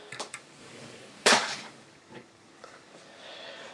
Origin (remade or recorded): remade